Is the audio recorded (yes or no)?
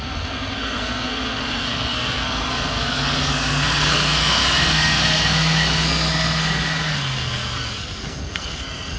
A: no